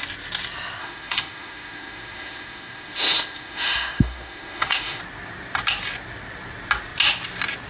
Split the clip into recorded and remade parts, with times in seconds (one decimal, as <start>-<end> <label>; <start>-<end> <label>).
0.0-0.8 recorded; 0.8-5.0 remade; 5.0-7.7 recorded